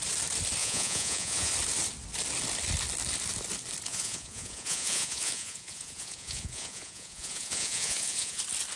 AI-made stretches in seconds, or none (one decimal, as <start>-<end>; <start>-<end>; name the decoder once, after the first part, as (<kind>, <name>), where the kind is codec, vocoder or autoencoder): 0.6-1.5 (vocoder, Vocos); 3.9-8.4